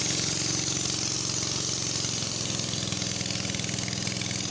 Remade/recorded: recorded